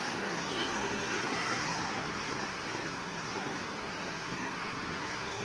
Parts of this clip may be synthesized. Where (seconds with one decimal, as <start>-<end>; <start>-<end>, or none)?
0.0-5.4